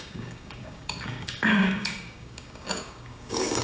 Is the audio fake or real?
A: fake